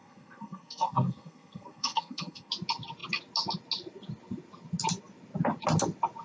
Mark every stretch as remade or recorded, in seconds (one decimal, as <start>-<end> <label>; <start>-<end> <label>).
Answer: 0.0-2.5 remade; 2.5-6.2 recorded